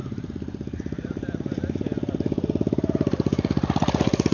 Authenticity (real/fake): fake